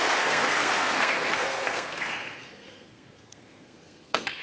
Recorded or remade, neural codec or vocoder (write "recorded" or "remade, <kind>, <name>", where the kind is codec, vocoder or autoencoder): remade, codec, SNAC